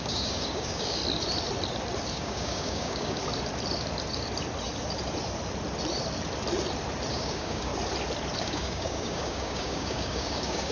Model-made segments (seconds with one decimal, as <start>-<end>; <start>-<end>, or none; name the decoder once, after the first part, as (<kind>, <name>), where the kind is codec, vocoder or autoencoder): 0.0-1.0 (codec, DAC); 2.1-3.2; 7.1-7.7; 8.4-10.7